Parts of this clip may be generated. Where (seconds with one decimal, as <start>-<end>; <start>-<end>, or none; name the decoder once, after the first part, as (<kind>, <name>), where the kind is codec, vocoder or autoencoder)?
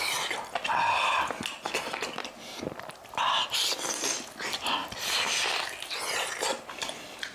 none